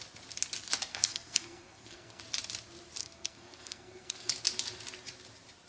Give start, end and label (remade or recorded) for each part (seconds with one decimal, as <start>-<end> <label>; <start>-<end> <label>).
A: 0.0-0.9 recorded; 0.9-2.2 remade; 2.2-3.0 recorded; 3.0-4.3 remade; 4.3-5.7 recorded